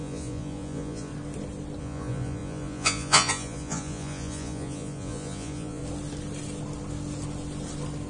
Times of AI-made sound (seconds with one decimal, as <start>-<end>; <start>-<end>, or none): 0.0-1.1; 1.8-5.8